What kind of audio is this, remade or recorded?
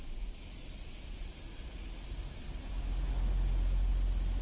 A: recorded